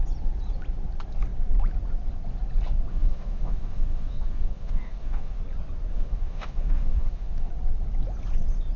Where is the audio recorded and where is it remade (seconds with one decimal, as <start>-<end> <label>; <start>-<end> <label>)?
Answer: 0.0-2.9 recorded; 2.9-5.4 remade; 5.4-5.9 recorded; 5.9-7.5 remade; 7.5-8.8 recorded